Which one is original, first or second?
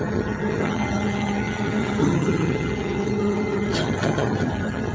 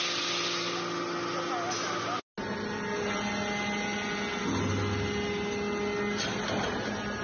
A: second